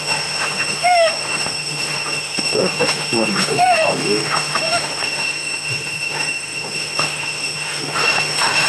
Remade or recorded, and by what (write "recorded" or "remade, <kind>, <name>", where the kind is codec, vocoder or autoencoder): remade, autoencoder, DAC-VAE